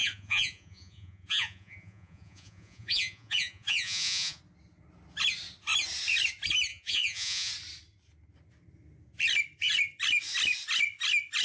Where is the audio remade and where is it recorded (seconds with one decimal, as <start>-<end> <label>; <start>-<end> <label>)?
0.0-4.4 remade; 4.4-6.7 recorded; 6.7-7.5 remade; 7.5-11.4 recorded